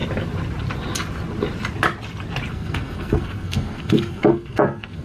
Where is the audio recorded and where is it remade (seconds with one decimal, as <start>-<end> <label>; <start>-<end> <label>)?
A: 0.0-2.5 recorded; 2.5-5.0 remade